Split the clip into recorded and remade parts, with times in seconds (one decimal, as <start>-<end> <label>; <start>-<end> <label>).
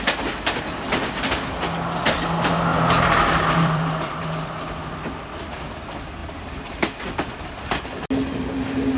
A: 0.0-2.7 recorded; 2.7-4.5 remade; 4.5-6.2 recorded; 6.2-7.8 remade; 7.8-9.0 recorded